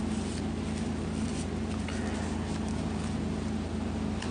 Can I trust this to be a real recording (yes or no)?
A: yes